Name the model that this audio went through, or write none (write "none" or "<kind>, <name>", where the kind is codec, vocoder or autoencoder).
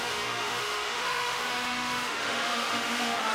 autoencoder, DAC-VAE